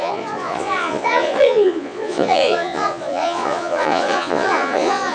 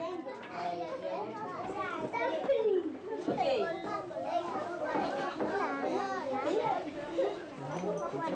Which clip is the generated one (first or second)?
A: first